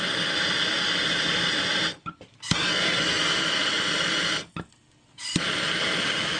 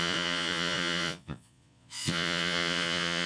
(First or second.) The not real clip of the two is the second